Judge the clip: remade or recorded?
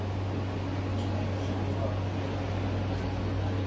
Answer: recorded